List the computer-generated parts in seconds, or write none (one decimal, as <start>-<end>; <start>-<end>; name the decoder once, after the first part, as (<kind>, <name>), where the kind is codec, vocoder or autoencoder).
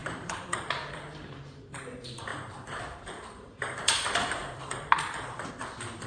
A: 0.0-1.8 (vocoder, BigVGAN v2); 2.3-5.5